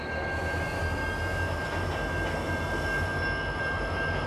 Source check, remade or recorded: recorded